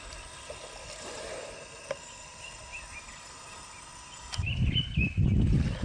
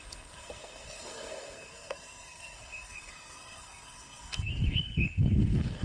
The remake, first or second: second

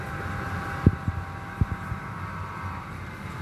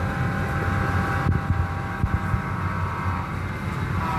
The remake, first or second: first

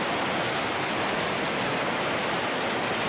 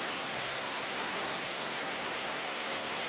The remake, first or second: second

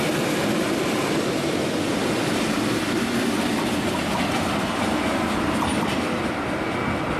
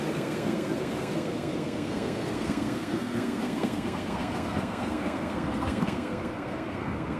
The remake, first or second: second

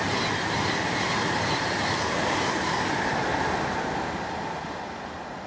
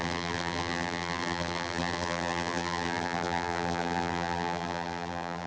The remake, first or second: second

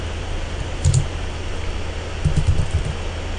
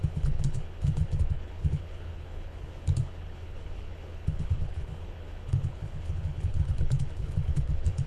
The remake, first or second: second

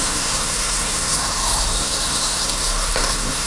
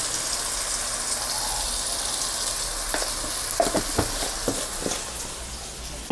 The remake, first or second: first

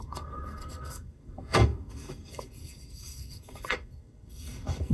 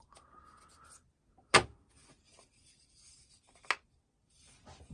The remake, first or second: first